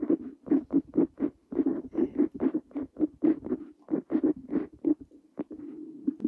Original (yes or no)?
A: yes